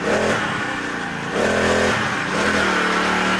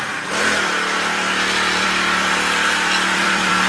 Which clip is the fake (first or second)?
second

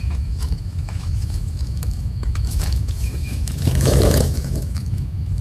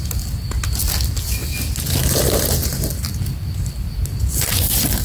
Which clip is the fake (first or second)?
first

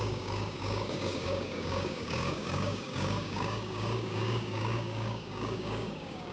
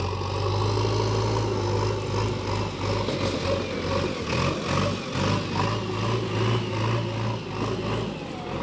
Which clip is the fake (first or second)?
first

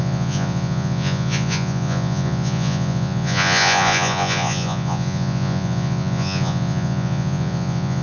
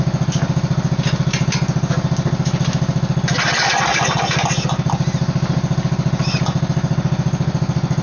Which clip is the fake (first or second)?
first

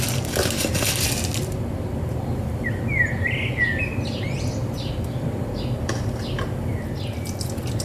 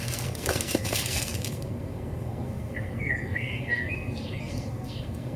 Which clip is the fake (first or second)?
second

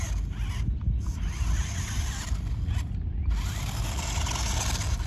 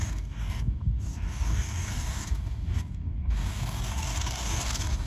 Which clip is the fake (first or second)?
second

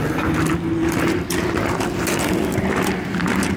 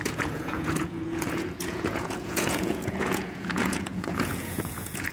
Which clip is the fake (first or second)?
second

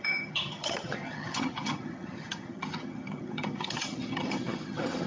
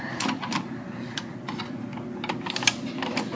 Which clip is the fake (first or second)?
first